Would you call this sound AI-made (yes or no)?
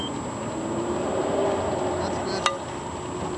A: no